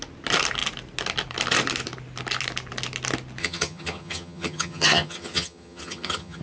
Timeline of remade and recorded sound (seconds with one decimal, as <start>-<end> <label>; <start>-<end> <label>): 0.0-3.4 recorded; 3.4-6.4 remade